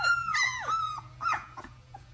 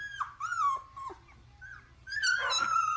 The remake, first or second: first